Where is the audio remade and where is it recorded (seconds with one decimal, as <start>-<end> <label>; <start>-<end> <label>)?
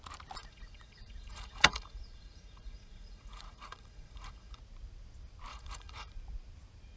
0.0-0.4 recorded; 0.4-4.6 remade; 4.6-5.5 recorded; 5.5-6.1 remade; 6.1-7.0 recorded